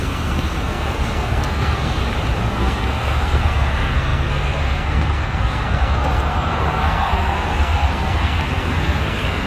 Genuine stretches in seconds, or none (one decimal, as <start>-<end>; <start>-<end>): 2.0-2.5